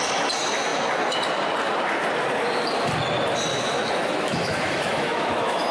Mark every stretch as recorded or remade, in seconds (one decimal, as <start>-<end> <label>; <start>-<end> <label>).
0.0-3.5 recorded; 3.5-5.7 remade